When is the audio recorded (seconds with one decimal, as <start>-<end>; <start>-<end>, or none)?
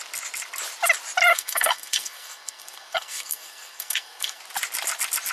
0.0-1.3; 4.4-5.3